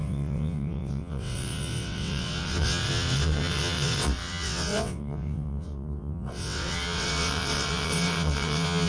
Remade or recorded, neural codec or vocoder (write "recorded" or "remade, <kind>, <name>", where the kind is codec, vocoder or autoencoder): remade, vocoder, WaveNeXt